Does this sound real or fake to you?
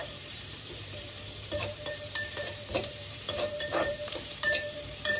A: fake